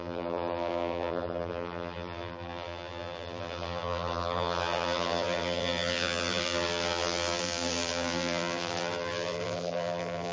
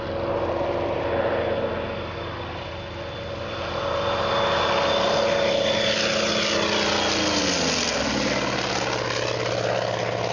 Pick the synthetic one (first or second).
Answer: first